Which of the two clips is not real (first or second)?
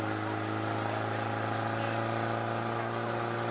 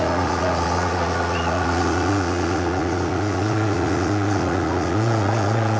second